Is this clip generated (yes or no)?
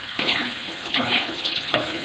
yes